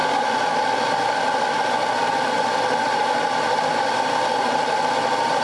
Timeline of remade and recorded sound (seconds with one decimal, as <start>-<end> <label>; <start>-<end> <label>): 0.0-5.4 recorded